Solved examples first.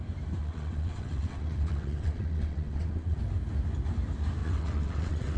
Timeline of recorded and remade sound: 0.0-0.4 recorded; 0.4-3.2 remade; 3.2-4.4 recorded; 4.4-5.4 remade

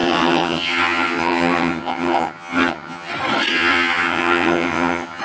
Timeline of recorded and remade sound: 0.0-3.1 remade; 3.1-3.5 recorded; 3.5-5.2 remade

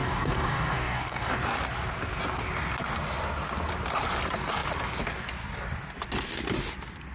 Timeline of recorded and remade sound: 0.0-1.3 remade; 1.3-7.1 recorded

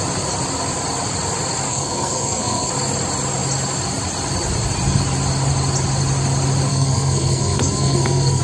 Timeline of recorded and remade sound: 0.0-1.7 recorded; 1.7-2.7 remade; 2.7-6.7 recorded; 6.7-8.4 remade

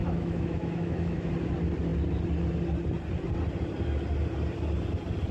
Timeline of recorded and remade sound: 0.0-1.3 remade; 1.3-5.3 recorded

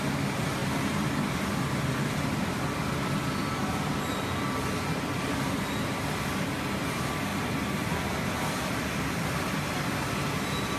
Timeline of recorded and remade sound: 0.0-10.8 recorded

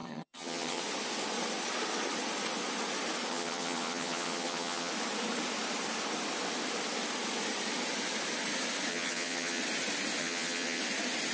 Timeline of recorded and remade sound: 0.0-0.8 remade; 0.8-3.3 recorded; 3.3-4.9 remade; 4.9-8.9 recorded; 8.9-9.6 remade; 9.6-10.2 recorded; 10.2-10.8 remade; 10.8-11.3 recorded

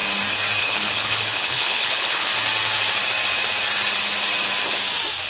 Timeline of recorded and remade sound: 0.0-0.6 recorded; 0.6-2.3 remade; 2.3-5.3 recorded